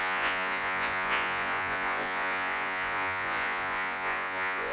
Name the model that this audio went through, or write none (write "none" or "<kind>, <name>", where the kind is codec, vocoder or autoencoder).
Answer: vocoder, Vocos